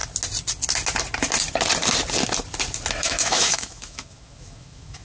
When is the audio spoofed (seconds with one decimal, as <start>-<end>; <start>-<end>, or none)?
3.0-5.0